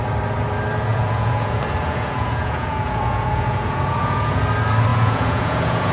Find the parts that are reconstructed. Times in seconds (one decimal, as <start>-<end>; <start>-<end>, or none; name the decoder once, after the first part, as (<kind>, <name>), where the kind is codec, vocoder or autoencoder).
0.9-4.4 (vocoder, Vocos); 4.9-5.9